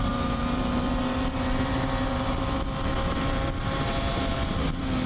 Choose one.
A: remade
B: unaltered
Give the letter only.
A